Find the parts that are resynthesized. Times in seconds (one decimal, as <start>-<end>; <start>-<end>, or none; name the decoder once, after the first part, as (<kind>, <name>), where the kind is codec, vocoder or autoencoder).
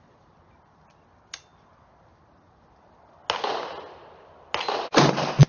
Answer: none